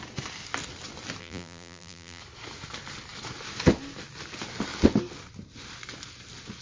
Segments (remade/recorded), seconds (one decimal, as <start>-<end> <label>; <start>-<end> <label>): 0.0-1.2 recorded; 1.2-2.2 remade; 2.2-6.6 recorded